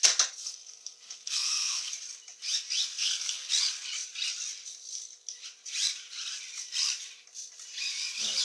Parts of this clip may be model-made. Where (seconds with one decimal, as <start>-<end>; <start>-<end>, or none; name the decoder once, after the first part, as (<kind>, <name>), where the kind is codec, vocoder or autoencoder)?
0.4-1.9 (codec, SNAC); 3.0-3.5